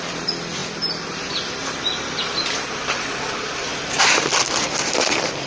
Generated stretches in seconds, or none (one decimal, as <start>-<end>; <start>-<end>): 0.0-5.5